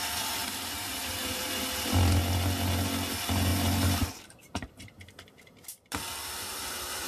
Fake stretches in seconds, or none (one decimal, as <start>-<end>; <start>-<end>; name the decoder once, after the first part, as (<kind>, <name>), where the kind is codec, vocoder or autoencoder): 0.4-1.4 (vocoder, BigVGAN v2); 3.5-7.1